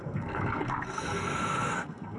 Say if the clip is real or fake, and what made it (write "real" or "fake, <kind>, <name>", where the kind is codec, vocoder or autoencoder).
fake, codec, SNAC